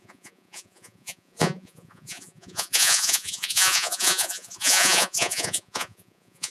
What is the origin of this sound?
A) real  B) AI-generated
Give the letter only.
B